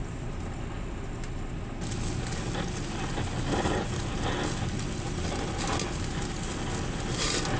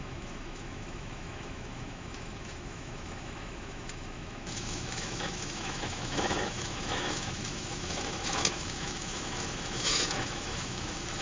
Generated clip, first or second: second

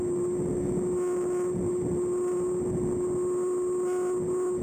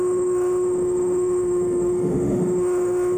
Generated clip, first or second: second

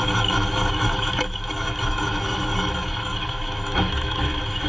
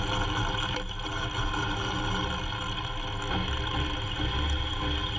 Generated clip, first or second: first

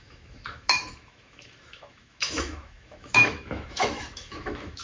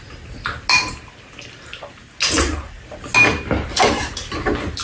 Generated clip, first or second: first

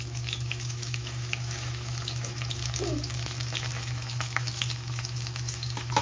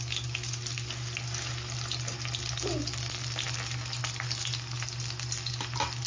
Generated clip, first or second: first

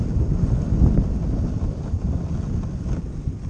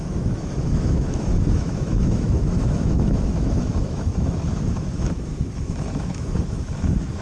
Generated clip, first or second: second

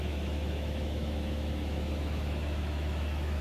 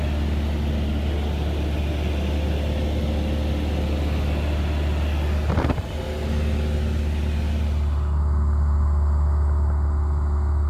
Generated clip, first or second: first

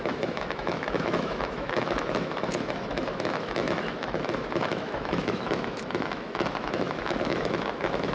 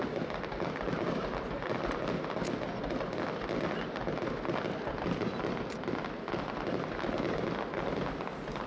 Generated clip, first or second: first